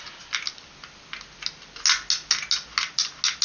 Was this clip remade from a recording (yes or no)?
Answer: no